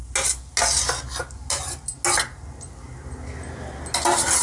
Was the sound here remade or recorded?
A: recorded